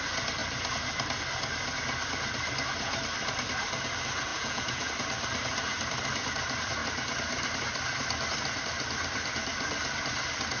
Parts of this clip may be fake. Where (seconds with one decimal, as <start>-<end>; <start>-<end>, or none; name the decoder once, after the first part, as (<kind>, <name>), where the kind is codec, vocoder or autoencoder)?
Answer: 4.3-4.9 (vocoder, Vocos)